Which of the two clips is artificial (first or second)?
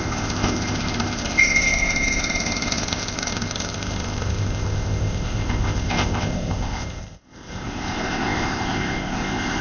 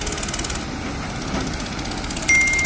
first